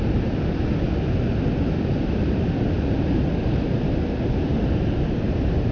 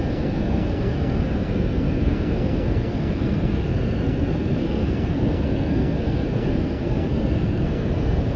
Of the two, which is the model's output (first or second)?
second